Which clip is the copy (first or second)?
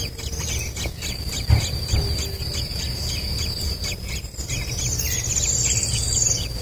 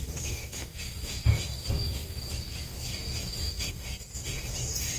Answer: second